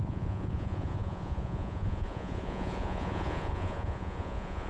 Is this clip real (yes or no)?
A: no